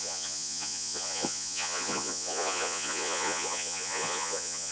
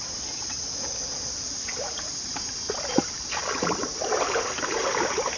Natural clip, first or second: second